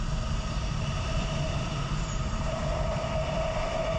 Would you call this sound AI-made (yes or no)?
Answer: yes